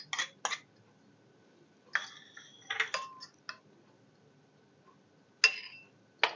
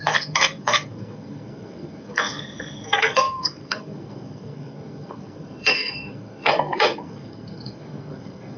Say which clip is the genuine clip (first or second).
first